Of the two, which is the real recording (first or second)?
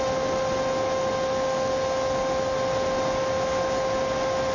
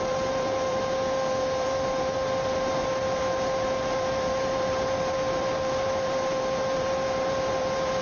first